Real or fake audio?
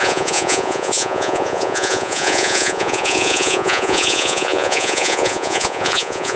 fake